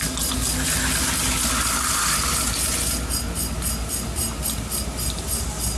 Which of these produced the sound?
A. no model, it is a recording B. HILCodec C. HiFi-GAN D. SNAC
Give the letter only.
A